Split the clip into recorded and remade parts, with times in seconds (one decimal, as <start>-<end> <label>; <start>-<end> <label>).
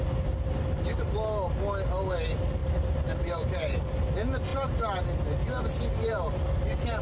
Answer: 0.0-2.6 recorded; 2.6-4.1 remade; 4.1-6.0 recorded; 6.0-7.0 remade